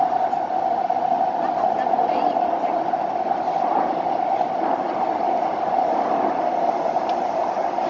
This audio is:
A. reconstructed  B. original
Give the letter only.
B